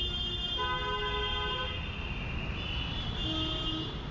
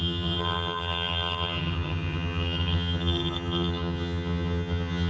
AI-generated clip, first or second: second